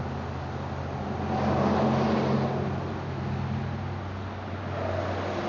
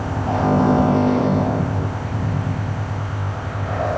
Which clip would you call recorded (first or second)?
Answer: first